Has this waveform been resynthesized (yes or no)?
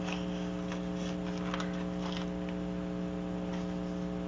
no